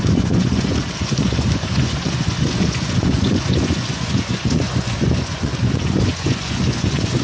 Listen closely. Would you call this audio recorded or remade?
remade